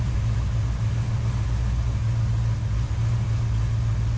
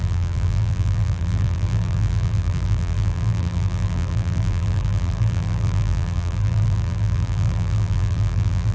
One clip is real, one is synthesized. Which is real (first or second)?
first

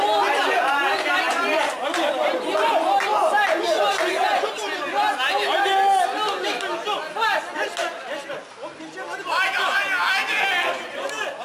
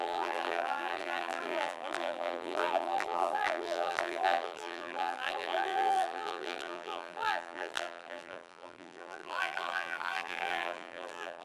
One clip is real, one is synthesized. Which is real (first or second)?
first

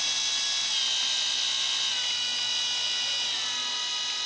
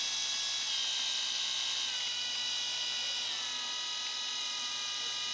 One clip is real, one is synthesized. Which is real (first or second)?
first